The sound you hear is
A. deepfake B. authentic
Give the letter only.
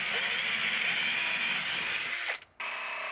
B